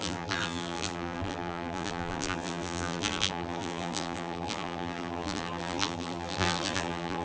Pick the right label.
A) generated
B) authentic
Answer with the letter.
A